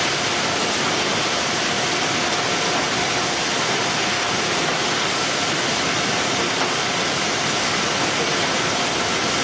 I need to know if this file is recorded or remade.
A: recorded